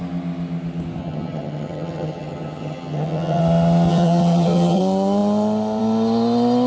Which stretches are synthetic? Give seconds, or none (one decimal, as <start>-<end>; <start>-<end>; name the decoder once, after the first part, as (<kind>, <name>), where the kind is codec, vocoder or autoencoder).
1.0-3.4 (vocoder, HiFi-GAN); 3.9-4.8